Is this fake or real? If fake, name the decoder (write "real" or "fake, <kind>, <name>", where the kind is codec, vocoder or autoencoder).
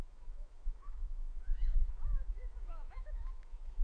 fake, autoencoder, DAC-VAE